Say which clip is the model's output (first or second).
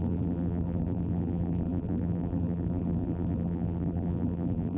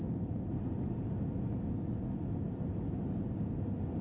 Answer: first